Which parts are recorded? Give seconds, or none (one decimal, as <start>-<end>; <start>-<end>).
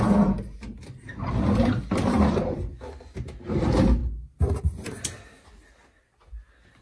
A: 0.0-4.0; 4.6-6.8